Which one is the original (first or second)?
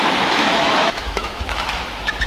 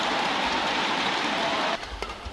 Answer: second